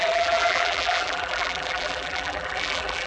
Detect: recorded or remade remade